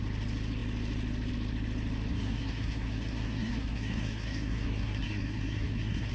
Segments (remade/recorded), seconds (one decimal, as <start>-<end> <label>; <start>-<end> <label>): 0.0-2.1 recorded; 2.1-6.1 remade